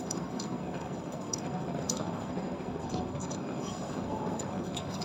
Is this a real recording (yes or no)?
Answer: no